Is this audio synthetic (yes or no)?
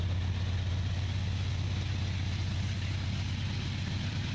no